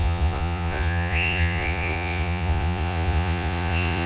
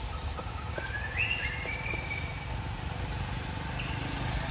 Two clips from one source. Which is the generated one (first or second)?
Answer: first